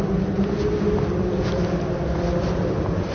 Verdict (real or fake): real